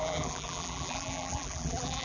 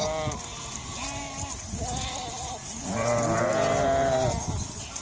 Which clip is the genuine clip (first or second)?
second